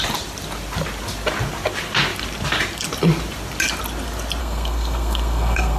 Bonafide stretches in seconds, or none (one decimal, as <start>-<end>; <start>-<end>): 0.0-4.4